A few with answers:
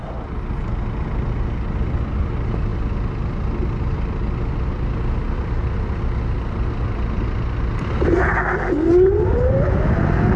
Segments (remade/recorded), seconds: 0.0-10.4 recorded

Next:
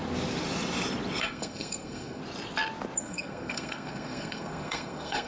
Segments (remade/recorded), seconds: 0.0-1.2 recorded; 1.2-2.2 remade; 2.2-3.0 recorded; 3.0-5.3 remade